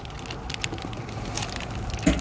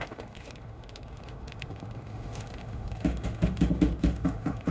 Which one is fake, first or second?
second